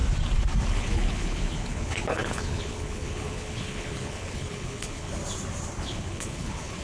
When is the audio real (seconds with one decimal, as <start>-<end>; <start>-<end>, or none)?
0.0-0.7; 5.2-5.8